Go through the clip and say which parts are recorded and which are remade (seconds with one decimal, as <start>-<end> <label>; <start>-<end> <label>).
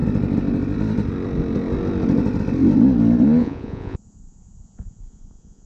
0.0-3.4 recorded; 3.4-5.7 remade